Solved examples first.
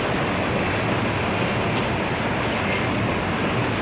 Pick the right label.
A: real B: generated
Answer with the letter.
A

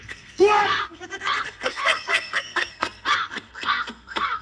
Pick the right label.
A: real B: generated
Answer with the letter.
B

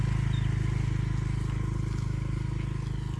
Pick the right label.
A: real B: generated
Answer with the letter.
A